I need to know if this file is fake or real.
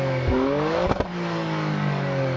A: fake